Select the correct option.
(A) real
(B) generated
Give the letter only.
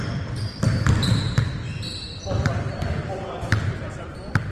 B